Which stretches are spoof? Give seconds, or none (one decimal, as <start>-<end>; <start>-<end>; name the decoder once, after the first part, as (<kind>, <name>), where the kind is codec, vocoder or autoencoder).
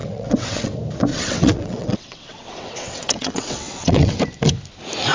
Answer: 0.0-0.7 (vocoder, WaveNeXt); 1.1-4.2